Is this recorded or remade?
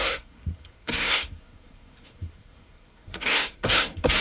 remade